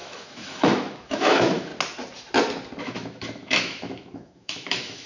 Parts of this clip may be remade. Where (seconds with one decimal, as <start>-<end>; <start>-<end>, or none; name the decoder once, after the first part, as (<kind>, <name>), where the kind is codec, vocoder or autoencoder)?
0.0-1.7 (autoencoder, DAC-VAE); 2.8-5.1